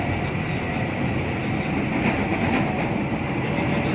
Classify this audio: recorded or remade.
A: recorded